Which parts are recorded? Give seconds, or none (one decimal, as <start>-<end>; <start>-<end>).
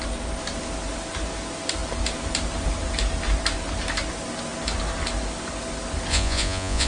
0.0-6.1